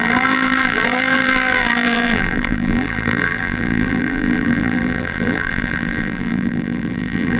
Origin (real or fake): fake